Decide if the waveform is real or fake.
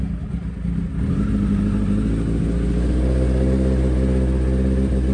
real